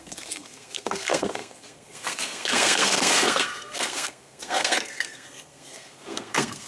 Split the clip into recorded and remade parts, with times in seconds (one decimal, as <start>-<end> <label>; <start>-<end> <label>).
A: 0.0-6.7 remade